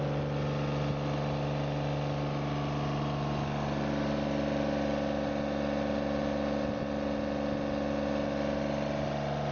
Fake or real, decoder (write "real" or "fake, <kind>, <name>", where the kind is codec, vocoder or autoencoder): real